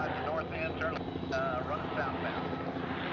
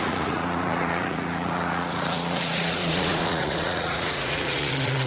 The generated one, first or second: second